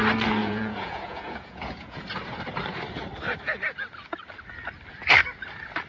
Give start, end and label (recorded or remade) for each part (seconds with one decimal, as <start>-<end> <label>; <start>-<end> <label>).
0.0-0.4 recorded; 0.4-2.0 remade; 2.0-5.9 recorded

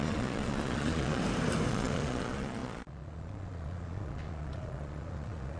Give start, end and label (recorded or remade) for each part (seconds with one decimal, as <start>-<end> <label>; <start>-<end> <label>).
0.0-1.2 remade; 1.2-1.7 recorded; 1.7-5.6 remade

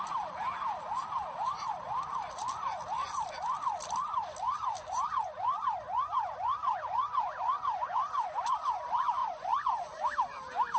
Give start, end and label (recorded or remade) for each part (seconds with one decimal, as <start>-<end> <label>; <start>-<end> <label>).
0.0-9.2 recorded; 9.2-10.0 remade; 10.0-10.8 recorded